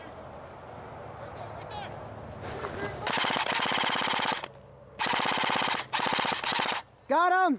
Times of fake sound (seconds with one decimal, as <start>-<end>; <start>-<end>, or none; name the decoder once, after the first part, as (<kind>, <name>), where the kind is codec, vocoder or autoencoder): none